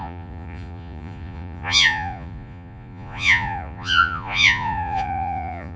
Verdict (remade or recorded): remade